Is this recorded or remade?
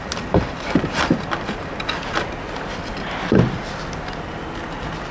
recorded